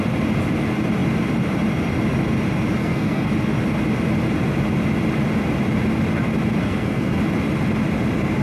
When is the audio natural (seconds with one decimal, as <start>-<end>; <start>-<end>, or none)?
0.0-2.8; 3.3-6.6; 7.2-8.4